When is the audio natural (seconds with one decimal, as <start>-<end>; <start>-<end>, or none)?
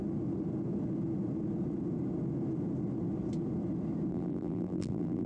0.0-4.1